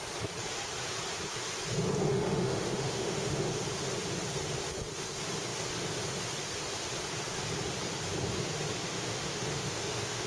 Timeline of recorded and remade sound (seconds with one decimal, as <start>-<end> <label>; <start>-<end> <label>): 0.0-2.1 recorded; 2.1-3.6 remade; 3.6-8.9 recorded; 8.9-10.3 remade